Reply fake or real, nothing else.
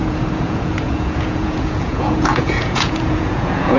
fake